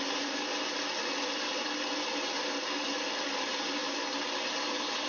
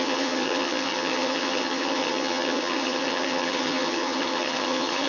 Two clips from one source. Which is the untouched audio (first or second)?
first